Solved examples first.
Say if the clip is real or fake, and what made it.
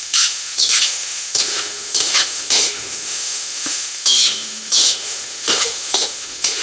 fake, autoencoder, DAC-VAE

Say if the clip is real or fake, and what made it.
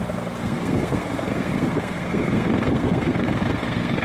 fake, codec, SNAC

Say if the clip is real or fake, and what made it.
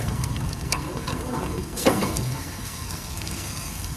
fake, codec, SNAC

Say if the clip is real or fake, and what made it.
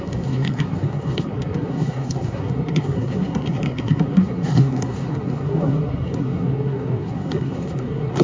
fake, codec, SNAC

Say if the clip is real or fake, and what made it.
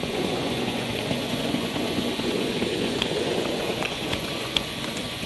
fake, vocoder, Vocos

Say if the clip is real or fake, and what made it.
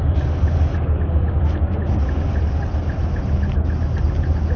real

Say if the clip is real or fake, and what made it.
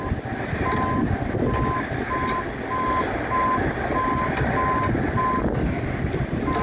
real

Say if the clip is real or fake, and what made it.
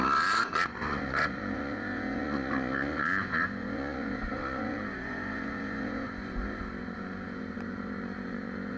fake, vocoder, Vocos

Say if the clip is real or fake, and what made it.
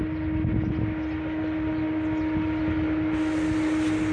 real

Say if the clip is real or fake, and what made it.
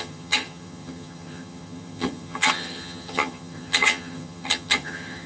fake, vocoder, HiFi-GAN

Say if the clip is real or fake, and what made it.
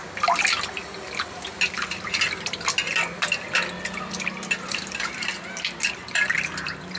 real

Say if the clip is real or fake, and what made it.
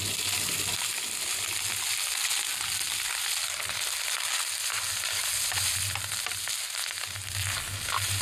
real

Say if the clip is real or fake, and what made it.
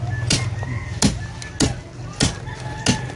real